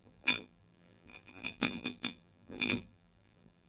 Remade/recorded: remade